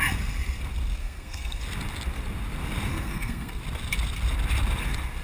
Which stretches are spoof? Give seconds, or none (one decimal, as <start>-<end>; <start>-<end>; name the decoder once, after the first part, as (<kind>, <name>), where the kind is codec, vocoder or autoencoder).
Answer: 1.0-1.6 (codec, SNAC); 2.9-3.6

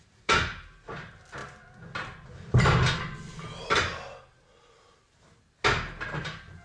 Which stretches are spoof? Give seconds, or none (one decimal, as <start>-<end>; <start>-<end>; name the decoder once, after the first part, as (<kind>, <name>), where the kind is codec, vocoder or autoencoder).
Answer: none

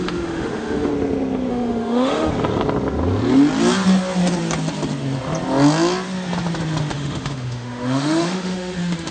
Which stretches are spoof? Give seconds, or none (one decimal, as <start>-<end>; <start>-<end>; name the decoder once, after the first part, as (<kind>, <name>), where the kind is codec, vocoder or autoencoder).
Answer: 0.0-0.9 (autoencoder, DAC-VAE); 1.5-2.3; 6.9-9.1

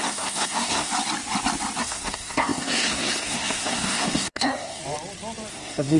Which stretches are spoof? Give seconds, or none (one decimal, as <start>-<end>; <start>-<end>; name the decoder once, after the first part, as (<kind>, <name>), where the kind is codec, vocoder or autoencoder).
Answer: 0.0-0.9 (codec, SNAC); 1.8-4.8; 5.5-6.0